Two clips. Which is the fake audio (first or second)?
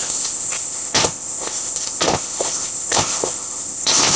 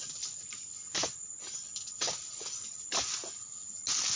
first